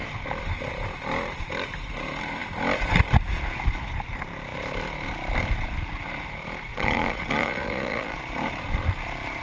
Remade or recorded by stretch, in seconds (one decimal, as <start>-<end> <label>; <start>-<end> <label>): 0.0-6.7 recorded; 6.7-8.2 remade; 8.2-9.4 recorded